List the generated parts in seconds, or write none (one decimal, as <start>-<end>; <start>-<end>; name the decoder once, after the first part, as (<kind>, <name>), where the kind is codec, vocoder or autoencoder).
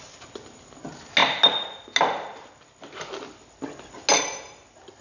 none